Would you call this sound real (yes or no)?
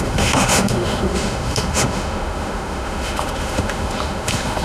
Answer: no